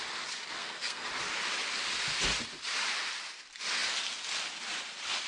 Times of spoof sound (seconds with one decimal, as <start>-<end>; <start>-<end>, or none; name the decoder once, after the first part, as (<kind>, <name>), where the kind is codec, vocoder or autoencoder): 0.6-1.1 (codec, SNAC)

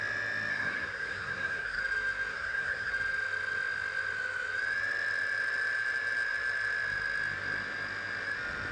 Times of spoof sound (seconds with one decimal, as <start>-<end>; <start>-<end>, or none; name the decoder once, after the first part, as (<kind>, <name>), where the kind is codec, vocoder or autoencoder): 0.5-1.8 (codec, SNAC); 2.3-2.9

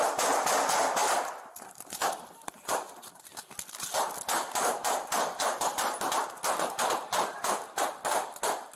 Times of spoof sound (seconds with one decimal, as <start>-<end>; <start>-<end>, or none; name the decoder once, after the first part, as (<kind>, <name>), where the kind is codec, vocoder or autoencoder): none

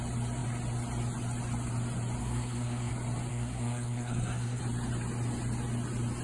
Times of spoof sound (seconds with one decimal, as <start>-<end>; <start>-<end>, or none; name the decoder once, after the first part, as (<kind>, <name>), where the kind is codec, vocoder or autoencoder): 2.2-2.9 (codec, SNAC); 3.3-4.6